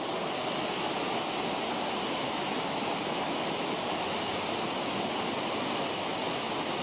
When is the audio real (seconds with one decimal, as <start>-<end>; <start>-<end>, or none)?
0.0-2.2; 4.1-6.8

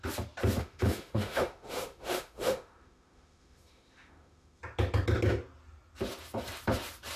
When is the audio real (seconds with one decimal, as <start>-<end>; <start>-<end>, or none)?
0.0-0.6; 4.6-7.2

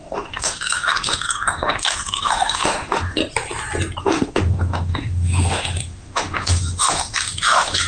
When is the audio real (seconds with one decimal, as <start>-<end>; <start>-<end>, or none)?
3.2-4.0

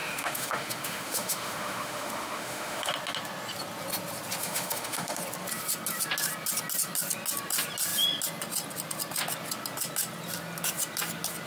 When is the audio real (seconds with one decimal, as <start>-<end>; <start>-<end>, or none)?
2.9-4.4; 5.2-11.5